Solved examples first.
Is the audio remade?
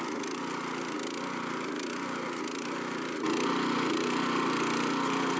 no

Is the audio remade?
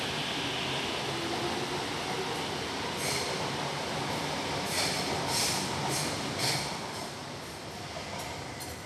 no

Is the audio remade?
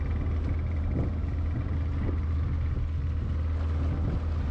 no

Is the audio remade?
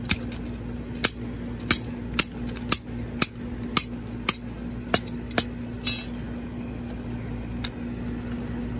no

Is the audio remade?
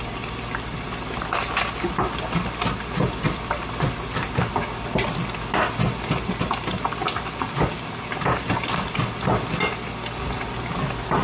no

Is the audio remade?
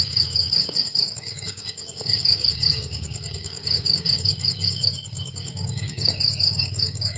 yes